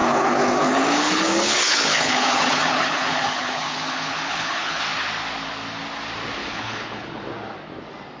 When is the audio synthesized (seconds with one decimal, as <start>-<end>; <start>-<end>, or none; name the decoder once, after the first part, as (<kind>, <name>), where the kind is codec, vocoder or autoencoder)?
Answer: 0.0-4.8 (codec, HILCodec); 6.4-7.2